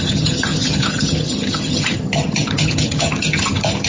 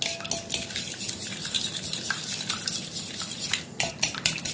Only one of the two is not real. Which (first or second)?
first